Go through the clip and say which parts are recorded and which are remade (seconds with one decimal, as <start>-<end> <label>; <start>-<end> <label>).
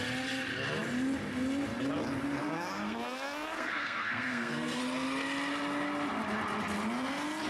0.0-2.4 recorded; 2.4-4.8 remade; 4.8-7.5 recorded